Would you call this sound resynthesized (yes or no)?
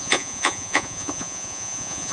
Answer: yes